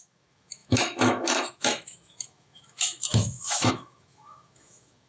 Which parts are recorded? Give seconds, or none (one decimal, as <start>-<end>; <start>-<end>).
none